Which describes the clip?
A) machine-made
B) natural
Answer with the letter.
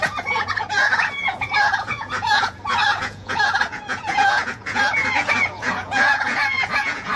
A